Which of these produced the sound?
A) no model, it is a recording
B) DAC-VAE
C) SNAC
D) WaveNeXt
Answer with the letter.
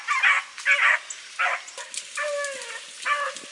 A